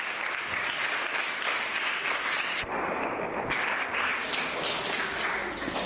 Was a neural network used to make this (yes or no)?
no